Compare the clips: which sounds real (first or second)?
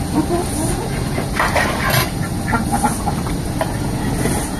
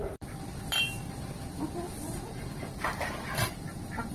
first